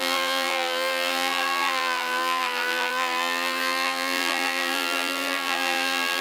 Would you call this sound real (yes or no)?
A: no